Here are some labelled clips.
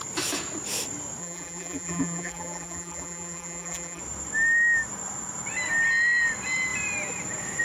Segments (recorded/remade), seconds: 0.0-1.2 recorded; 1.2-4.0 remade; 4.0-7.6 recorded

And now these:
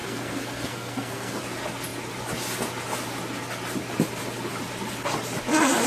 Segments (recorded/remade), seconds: 0.0-1.4 remade; 1.4-5.9 recorded

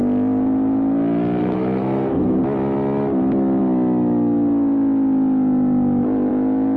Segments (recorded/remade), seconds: 0.0-1.4 recorded; 1.4-2.4 remade; 2.4-6.8 recorded

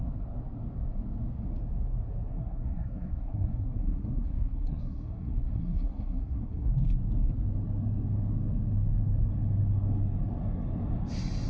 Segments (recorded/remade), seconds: 0.0-2.3 recorded; 2.3-6.7 remade; 6.7-11.5 recorded